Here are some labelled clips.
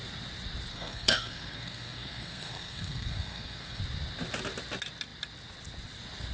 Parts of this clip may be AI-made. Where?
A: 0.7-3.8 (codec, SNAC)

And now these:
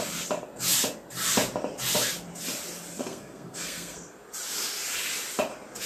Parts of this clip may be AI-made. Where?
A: 3.0-4.0 (codec, SNAC)

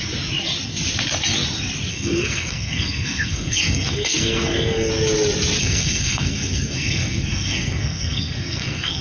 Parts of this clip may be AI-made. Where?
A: 1.9-4.9 (codec, SNAC); 5.6-9.0

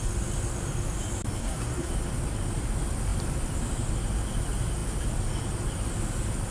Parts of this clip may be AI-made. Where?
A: 1.4-1.9 (codec, SNAC)

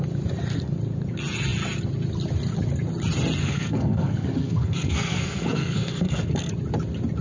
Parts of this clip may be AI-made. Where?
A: 3.4-6.5 (codec, SNAC)

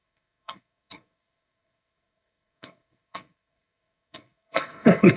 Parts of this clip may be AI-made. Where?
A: 0.0-5.2 (codec, SNAC)

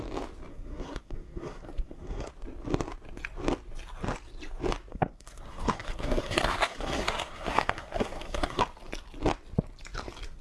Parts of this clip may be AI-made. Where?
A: 0.5-2.3 (codec, SNAC); 4.9-8.6